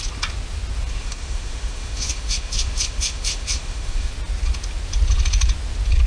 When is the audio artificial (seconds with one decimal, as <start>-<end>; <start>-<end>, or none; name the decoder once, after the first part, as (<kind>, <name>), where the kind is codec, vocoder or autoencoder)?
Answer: 1.0-4.1 (autoencoder, DAC-VAE)